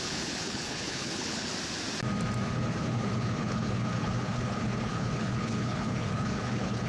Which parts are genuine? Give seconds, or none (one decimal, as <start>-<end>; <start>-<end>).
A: 1.5-2.5